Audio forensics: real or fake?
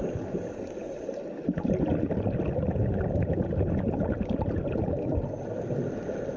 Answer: real